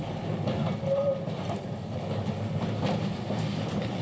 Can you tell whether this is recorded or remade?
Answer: recorded